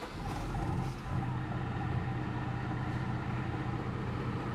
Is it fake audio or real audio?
real